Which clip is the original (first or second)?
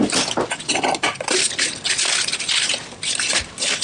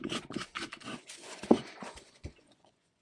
first